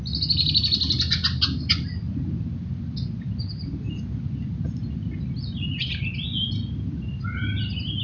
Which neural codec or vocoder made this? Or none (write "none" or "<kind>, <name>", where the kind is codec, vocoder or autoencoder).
none